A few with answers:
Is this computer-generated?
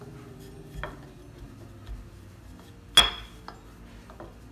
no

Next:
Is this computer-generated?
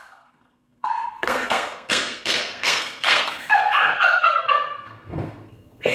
yes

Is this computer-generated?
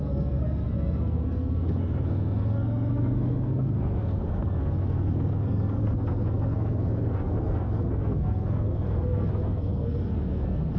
yes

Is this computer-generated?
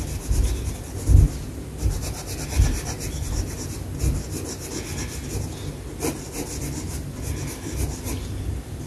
no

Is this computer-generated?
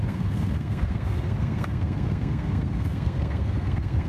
yes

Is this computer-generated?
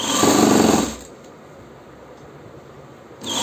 no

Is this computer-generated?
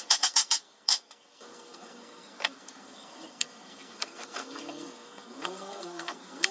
yes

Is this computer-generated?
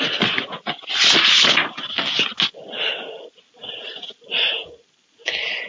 no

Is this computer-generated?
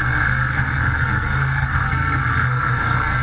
yes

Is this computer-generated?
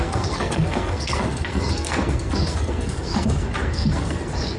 yes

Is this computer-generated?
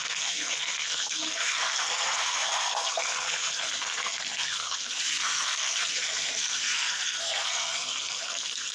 yes